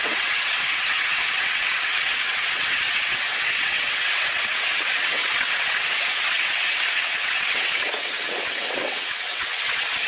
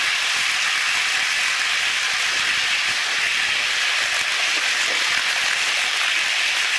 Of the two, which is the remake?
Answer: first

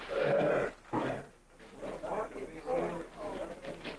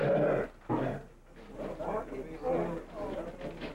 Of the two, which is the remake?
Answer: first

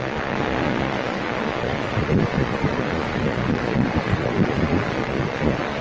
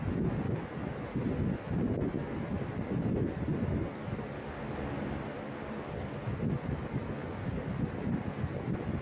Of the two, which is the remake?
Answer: first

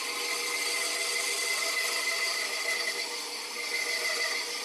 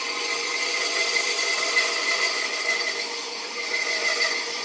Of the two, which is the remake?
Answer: second